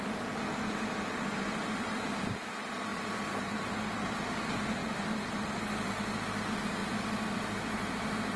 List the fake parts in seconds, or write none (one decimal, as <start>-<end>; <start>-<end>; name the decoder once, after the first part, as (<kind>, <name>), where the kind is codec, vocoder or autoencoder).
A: 2.9-3.7 (vocoder, BigVGAN v2); 6.8-8.4